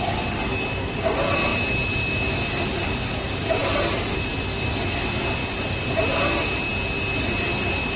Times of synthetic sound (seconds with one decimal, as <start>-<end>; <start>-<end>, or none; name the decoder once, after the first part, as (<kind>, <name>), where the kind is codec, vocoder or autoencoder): none